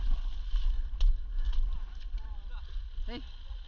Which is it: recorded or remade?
recorded